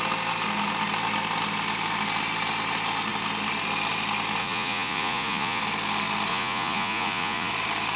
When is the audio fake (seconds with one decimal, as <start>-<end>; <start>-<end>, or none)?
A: 4.4-5.6; 6.3-7.5